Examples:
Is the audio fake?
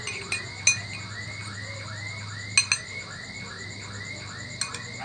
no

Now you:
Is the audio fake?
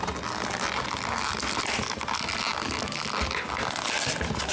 no